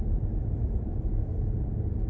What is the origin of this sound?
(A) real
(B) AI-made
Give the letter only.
B